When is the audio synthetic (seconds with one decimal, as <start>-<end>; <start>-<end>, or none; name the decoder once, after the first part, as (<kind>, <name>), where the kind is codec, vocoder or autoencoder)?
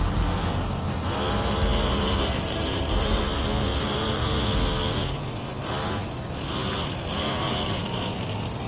1.7-3.2 (vocoder, BigVGAN v2); 3.7-4.2